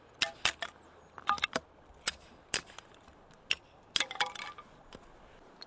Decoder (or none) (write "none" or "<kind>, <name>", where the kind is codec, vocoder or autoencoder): none